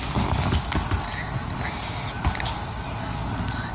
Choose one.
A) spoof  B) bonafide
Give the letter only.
B